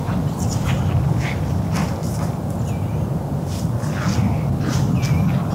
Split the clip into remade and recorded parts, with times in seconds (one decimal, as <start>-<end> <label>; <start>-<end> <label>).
0.0-5.5 recorded